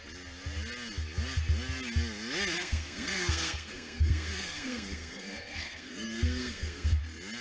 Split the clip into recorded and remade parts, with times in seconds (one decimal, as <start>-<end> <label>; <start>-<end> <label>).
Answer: 0.0-2.6 recorded; 2.6-7.0 remade; 7.0-7.4 recorded